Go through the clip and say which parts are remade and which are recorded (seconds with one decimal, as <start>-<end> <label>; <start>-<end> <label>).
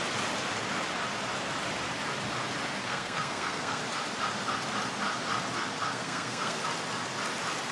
0.0-2.8 recorded; 2.8-3.8 remade; 3.8-5.9 recorded; 5.9-6.6 remade; 6.6-7.7 recorded